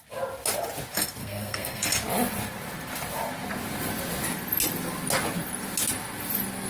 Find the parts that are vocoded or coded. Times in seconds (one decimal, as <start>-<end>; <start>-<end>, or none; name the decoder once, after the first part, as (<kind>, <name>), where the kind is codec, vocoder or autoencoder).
1.2-1.9 (codec, SNAC)